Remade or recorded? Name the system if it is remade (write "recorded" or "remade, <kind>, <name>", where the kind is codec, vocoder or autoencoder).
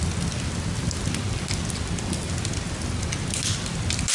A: recorded